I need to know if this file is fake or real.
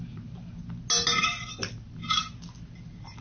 real